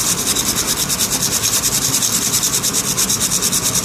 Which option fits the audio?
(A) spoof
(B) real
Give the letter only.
B